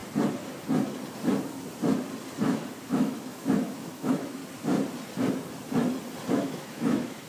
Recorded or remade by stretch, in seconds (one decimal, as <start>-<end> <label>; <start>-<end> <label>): 0.0-2.9 recorded; 2.9-4.4 remade; 4.4-6.3 recorded; 6.3-7.3 remade